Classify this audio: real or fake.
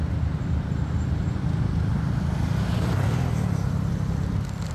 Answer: fake